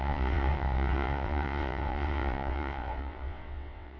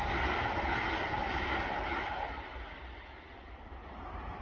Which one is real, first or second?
second